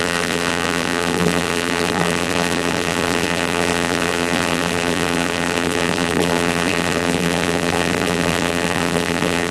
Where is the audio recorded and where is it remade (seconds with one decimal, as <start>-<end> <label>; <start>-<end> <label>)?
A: 0.0-9.5 remade